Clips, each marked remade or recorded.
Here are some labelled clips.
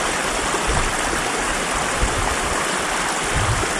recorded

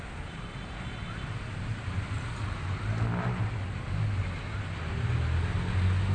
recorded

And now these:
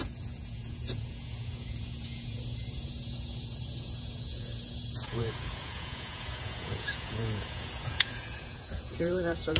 remade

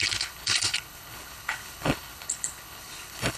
remade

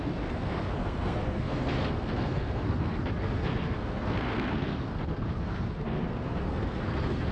remade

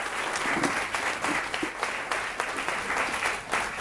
recorded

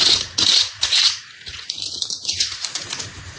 remade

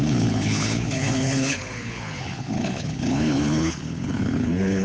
remade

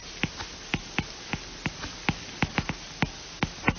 recorded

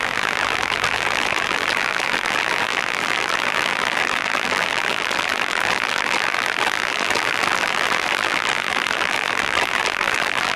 remade